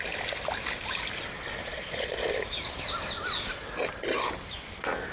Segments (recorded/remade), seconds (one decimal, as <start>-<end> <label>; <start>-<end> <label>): 0.0-1.6 recorded; 1.6-2.3 remade; 2.3-5.1 recorded